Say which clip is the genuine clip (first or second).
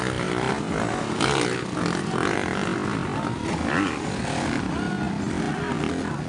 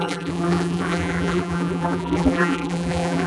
first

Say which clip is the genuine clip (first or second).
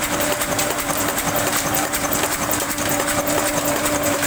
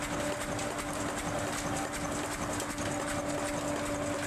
second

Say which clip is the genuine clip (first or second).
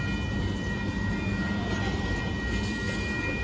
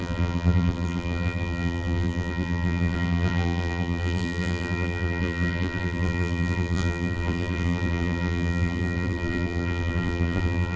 first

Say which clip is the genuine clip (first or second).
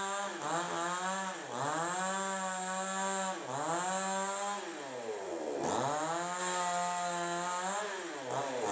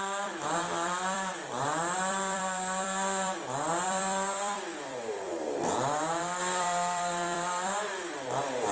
first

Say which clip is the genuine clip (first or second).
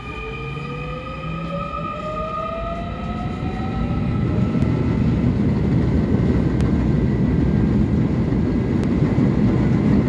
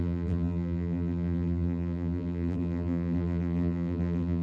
first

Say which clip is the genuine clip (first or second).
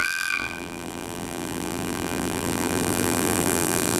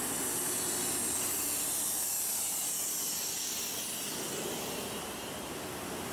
second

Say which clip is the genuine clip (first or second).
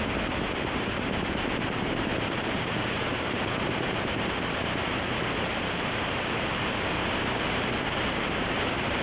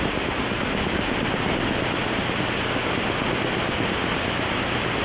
second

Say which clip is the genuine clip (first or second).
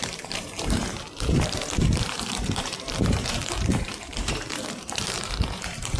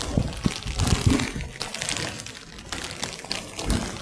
second